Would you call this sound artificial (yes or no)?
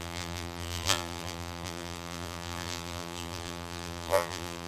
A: yes